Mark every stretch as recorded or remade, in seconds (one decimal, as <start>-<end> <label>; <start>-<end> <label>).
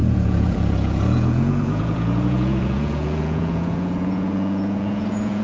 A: 0.0-5.4 remade